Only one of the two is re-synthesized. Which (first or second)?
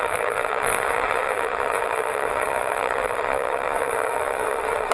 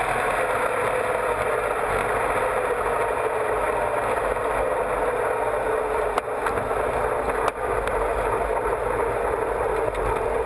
first